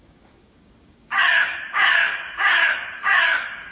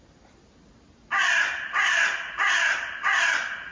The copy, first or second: first